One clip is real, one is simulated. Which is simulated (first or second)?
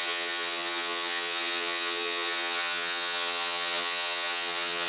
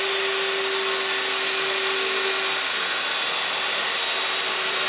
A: first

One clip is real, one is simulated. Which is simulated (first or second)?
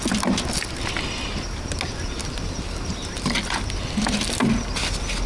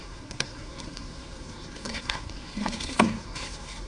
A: second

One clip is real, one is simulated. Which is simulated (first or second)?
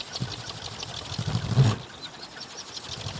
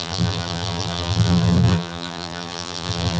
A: second